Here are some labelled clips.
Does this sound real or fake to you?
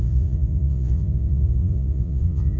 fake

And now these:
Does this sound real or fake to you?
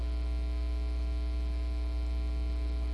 real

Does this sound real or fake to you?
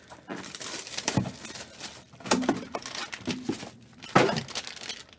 real